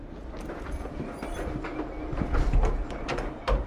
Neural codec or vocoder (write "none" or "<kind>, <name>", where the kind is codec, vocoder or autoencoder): none